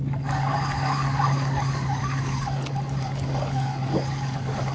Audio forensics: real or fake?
fake